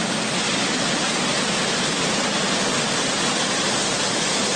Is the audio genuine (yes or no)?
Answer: yes